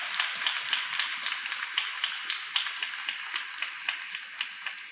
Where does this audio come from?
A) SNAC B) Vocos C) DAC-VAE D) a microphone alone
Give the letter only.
D